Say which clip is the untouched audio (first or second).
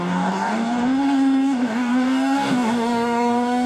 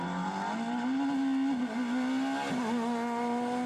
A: second